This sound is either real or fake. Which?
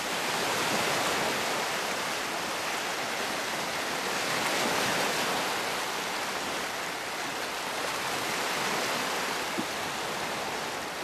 real